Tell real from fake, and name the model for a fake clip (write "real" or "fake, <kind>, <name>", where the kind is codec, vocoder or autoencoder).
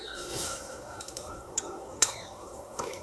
fake, codec, SNAC